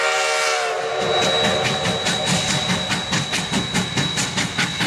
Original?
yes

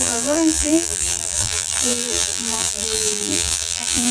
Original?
no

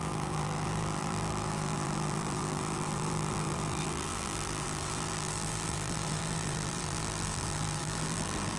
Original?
no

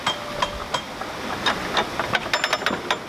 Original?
yes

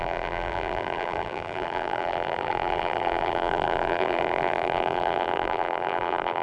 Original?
no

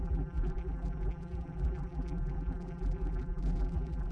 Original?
no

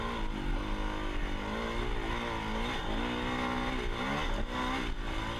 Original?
yes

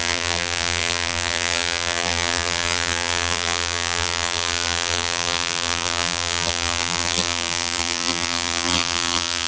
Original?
no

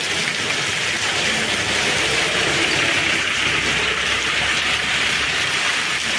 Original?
no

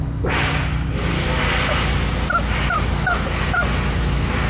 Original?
yes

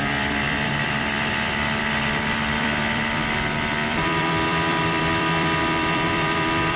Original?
no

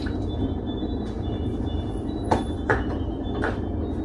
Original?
no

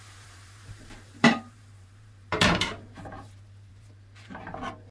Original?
no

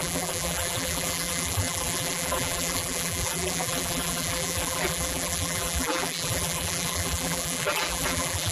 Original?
no